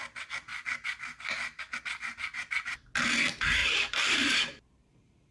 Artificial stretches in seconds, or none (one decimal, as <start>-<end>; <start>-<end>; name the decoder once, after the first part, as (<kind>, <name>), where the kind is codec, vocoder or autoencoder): 3.6-5.3 (vocoder, BigVGAN v2)